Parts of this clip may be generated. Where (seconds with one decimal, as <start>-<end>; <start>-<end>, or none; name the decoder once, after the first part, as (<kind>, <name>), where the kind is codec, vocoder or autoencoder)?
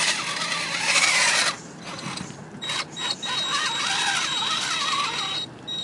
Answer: 0.0-1.9 (vocoder, BigVGAN v2)